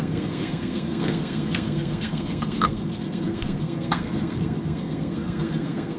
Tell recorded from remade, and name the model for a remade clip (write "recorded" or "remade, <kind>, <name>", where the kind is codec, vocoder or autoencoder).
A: remade, codec, SNAC